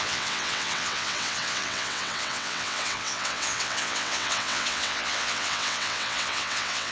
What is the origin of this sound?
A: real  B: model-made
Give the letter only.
B